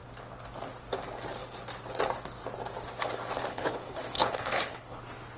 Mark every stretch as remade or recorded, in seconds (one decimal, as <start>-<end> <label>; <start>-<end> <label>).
0.0-3.5 recorded; 3.5-5.0 remade; 5.0-5.4 recorded